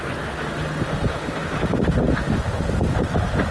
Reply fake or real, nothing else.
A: real